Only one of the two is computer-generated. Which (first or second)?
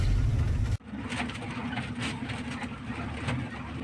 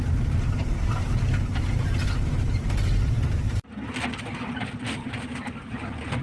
second